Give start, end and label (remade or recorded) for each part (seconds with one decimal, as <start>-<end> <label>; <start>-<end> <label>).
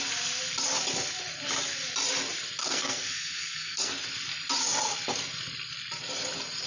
0.0-2.6 recorded; 2.6-3.9 remade; 3.9-6.7 recorded